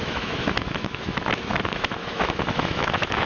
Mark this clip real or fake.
fake